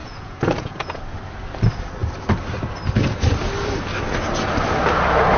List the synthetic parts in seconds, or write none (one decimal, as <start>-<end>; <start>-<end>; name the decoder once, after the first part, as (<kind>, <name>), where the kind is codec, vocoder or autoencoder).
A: 0.0-1.0 (vocoder, Vocos)